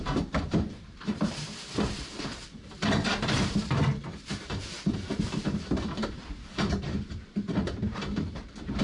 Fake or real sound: fake